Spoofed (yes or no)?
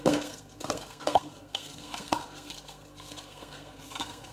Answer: yes